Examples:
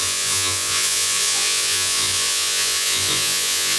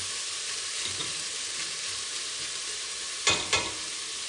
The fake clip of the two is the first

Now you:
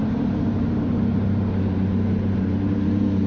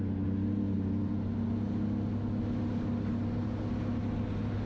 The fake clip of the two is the first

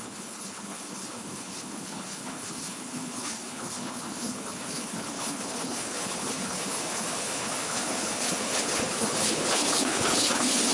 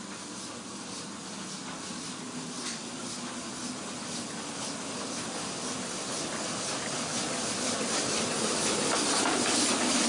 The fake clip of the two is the first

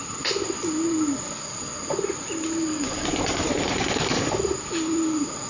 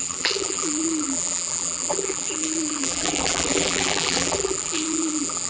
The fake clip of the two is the second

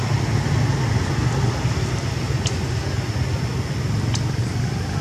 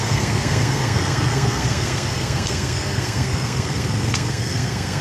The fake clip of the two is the second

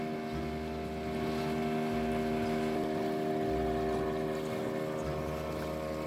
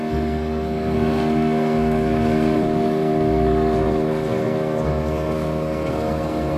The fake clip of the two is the second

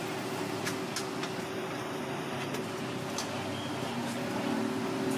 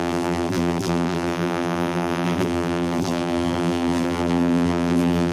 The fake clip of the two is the second